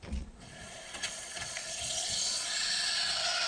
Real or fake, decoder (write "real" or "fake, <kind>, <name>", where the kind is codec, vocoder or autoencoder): fake, vocoder, Vocos